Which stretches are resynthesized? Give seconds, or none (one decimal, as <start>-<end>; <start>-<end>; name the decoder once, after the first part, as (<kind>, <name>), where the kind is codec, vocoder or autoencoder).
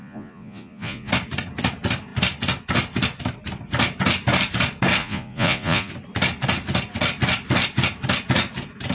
0.0-1.1 (vocoder, Vocos); 5.0-5.9